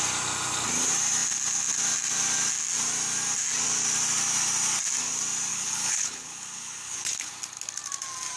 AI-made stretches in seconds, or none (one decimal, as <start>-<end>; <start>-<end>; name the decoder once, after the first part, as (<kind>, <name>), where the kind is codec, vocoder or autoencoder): 5.5-7.3 (codec, HILCodec)